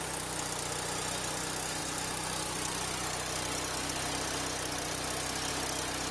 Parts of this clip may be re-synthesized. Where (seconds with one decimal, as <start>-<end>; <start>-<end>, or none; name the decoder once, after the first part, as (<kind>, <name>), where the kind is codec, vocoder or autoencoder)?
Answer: none